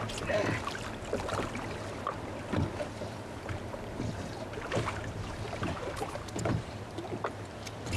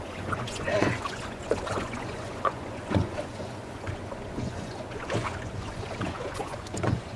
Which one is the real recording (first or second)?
first